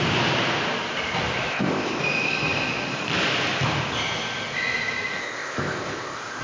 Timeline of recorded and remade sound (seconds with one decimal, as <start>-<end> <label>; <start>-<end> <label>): 0.0-1.5 recorded; 1.5-2.0 remade; 2.0-5.2 recorded; 5.2-6.4 remade